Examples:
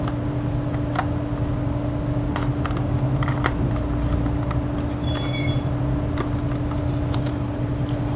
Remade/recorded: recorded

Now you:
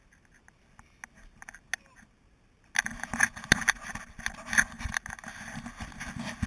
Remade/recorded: recorded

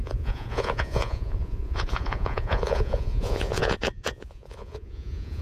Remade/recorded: remade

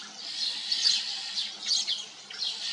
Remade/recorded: recorded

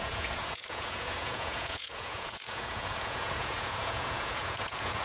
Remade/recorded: remade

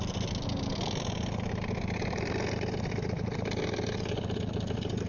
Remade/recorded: recorded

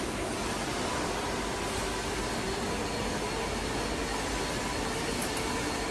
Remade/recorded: recorded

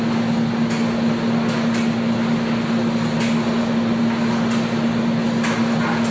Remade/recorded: recorded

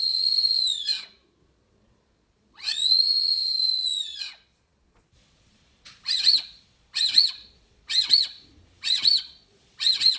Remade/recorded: remade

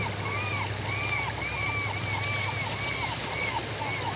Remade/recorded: recorded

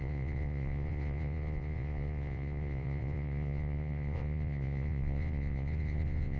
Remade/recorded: remade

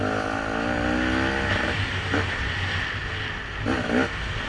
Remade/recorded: recorded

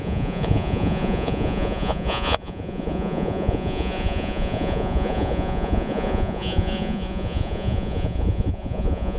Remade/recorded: remade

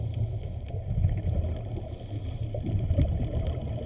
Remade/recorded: recorded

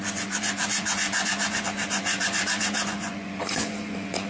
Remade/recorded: remade